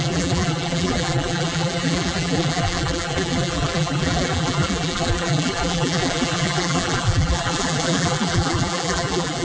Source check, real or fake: fake